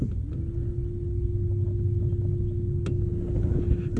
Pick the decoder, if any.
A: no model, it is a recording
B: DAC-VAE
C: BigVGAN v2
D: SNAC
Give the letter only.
A